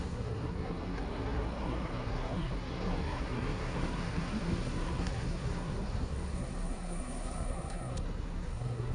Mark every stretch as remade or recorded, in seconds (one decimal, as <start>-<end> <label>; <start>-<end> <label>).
0.0-8.9 remade